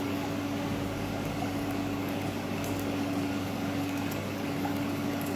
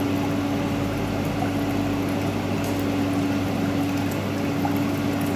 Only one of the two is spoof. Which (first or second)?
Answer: first